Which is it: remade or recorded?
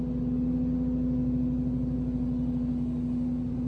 recorded